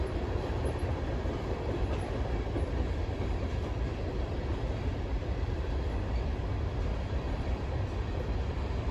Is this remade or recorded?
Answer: remade